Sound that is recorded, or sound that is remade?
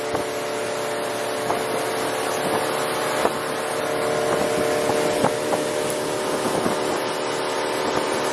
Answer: recorded